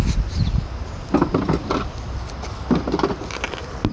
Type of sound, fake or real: real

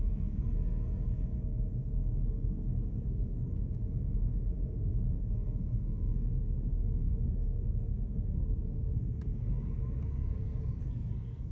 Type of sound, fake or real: fake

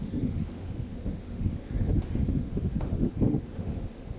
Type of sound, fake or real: fake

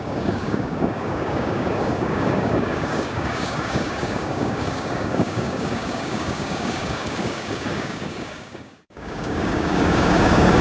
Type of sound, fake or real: fake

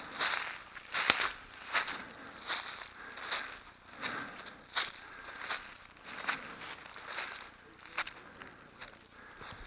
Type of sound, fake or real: real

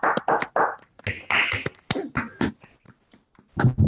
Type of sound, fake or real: real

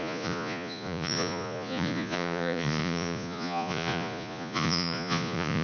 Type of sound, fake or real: fake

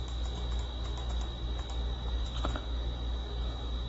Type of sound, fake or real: real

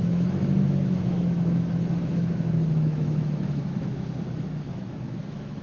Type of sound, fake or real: fake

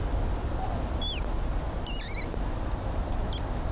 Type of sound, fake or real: real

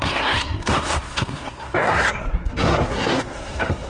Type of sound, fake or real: fake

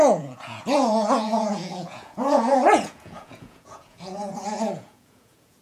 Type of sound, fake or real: fake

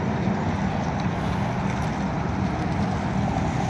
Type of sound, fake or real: real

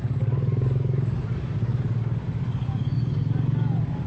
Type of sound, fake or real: fake